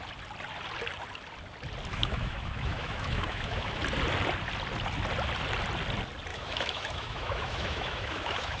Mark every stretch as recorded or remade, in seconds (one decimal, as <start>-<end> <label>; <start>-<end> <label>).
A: 0.0-1.9 recorded; 1.9-3.8 remade; 3.8-6.3 recorded; 6.3-8.6 remade

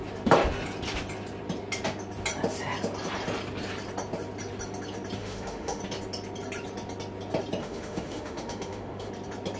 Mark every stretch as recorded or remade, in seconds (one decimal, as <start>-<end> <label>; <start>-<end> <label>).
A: 0.0-5.2 recorded; 5.2-5.8 remade; 5.8-7.6 recorded; 7.6-9.1 remade; 9.1-9.6 recorded

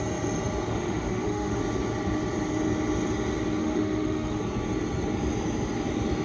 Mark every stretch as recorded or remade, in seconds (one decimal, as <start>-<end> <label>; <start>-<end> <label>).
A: 0.0-0.7 recorded; 0.7-1.6 remade; 1.6-3.6 recorded; 3.6-4.4 remade; 4.4-6.2 recorded

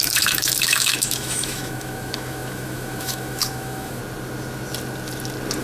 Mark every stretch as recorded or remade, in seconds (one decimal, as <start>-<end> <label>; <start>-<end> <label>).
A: 0.0-4.0 remade; 4.0-5.6 recorded